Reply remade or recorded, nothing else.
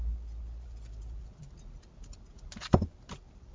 recorded